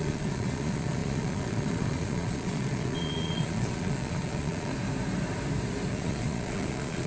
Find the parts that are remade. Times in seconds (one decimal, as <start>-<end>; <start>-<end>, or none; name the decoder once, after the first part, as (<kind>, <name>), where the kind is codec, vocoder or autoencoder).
0.0-4.7 (vocoder, Vocos); 5.9-7.1